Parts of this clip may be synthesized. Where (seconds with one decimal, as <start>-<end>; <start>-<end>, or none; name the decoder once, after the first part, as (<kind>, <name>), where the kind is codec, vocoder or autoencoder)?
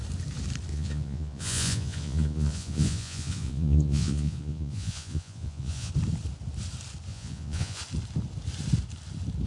0.7-5.9 (vocoder, Vocos); 7.1-7.8